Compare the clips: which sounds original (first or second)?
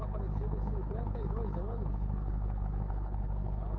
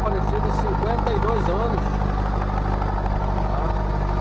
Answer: second